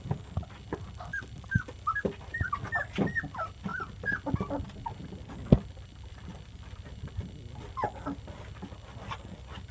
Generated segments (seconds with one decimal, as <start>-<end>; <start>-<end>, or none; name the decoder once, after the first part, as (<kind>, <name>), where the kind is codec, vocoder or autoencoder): 3.7-4.6 (vocoder, BigVGAN v2); 5.0-8.0